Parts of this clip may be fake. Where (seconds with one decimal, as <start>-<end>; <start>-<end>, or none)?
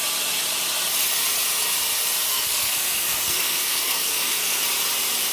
2.3-4.6